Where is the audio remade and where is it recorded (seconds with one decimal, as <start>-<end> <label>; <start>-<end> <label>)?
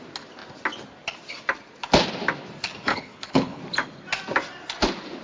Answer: 0.0-2.9 recorded; 2.9-3.6 remade; 3.6-5.2 recorded